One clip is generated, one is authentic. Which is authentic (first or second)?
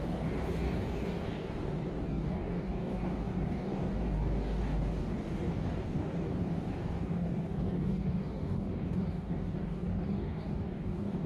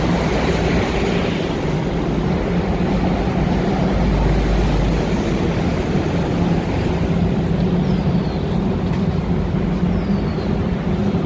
second